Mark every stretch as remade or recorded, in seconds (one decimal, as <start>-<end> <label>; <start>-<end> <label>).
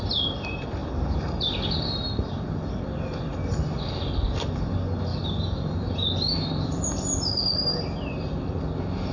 0.0-5.1 recorded; 5.1-8.6 remade; 8.6-9.1 recorded